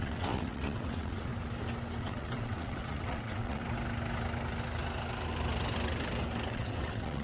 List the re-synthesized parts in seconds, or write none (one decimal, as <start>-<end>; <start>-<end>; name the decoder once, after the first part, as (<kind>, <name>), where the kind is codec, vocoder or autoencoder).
0.0-1.3 (vocoder, WaveNeXt); 2.0-3.6; 6.5-7.2